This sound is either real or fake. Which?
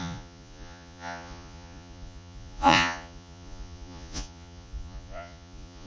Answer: fake